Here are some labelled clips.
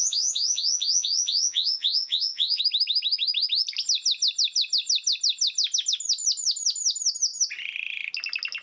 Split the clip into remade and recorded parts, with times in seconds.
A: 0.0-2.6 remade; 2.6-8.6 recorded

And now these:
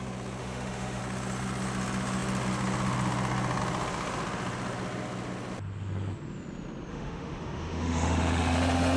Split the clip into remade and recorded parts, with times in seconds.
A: 0.0-0.4 recorded; 0.4-1.0 remade; 1.0-6.9 recorded; 6.9-9.0 remade

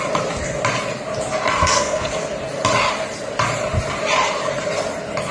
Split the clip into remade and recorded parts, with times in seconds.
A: 0.0-1.6 recorded; 1.6-2.1 remade; 2.1-5.3 recorded

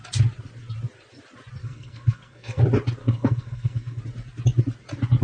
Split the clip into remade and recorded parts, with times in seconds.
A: 0.0-1.6 recorded; 1.6-2.6 remade; 2.6-3.0 recorded; 3.0-4.0 remade; 4.0-5.2 recorded

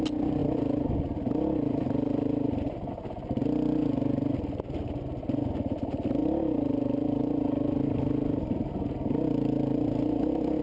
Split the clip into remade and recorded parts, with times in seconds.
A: 0.0-0.4 recorded; 0.4-2.9 remade; 2.9-6.2 recorded; 6.2-7.5 remade; 7.5-10.6 recorded

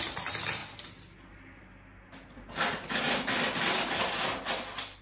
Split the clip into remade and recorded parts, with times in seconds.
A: 0.0-5.0 recorded

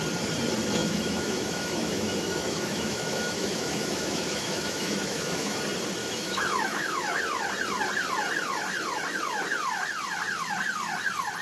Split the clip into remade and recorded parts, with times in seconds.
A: 0.0-0.8 recorded; 0.8-5.6 remade; 5.6-6.0 recorded; 6.0-7.2 remade; 7.2-11.4 recorded

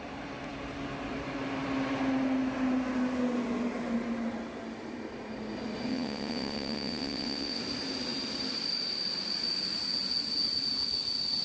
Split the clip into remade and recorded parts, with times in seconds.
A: 0.0-5.9 recorded; 5.9-7.6 remade; 7.6-11.4 recorded